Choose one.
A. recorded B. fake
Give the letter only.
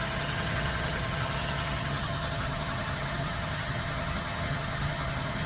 B